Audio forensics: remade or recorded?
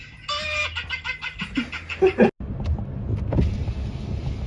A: recorded